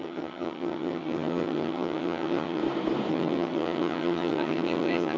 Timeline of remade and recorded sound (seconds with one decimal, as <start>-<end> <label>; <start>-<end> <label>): 0.0-2.6 remade; 2.6-3.1 recorded; 3.1-5.2 remade